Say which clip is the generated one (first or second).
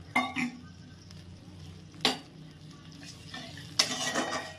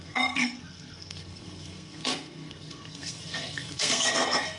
second